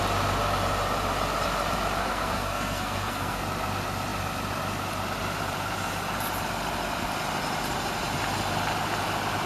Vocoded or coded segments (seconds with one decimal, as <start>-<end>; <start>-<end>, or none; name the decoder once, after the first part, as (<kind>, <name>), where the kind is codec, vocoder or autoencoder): 2.0-3.4 (codec, SNAC)